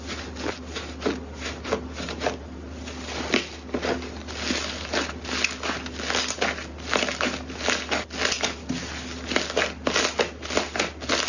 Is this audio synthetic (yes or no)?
no